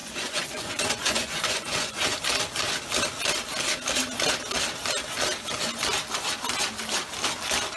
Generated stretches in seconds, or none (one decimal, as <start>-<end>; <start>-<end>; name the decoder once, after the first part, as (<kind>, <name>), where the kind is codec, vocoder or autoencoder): 0.0-2.2 (vocoder, Vocos)